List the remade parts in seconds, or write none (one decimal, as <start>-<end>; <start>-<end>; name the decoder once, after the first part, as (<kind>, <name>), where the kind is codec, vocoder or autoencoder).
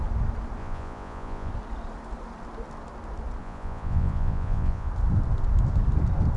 0.6-1.5 (vocoder, Vocos); 3.4-4.9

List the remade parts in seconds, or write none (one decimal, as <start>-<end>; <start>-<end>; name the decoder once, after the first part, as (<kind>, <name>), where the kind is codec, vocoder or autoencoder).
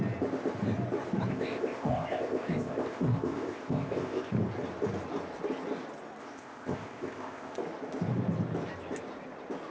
1.3-4.3 (codec, ZipCodec); 6.2-7.6